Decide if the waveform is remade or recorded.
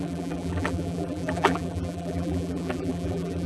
remade